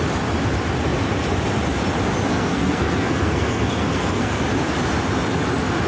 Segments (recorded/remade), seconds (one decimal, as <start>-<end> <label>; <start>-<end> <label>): 0.0-2.3 recorded; 2.3-4.4 remade; 4.4-5.9 recorded